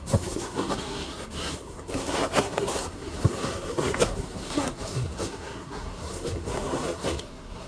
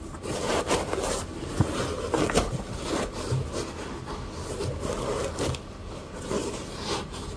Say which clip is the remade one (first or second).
first